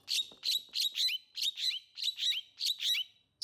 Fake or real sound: real